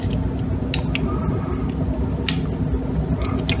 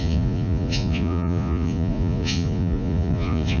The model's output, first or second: second